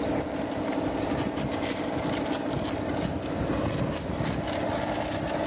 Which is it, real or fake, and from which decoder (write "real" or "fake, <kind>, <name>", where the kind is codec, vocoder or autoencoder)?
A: real